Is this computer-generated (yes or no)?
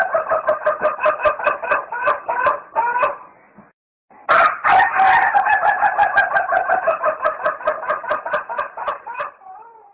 no